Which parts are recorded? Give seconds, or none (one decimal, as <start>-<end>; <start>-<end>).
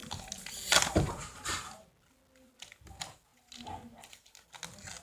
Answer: 0.0-5.0